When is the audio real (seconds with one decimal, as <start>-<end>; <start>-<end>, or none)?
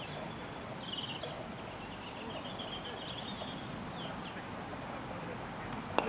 0.0-6.1